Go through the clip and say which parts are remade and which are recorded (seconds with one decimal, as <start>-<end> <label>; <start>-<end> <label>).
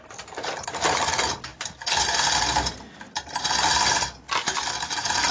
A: 0.0-1.5 recorded; 1.5-2.0 remade; 2.0-5.3 recorded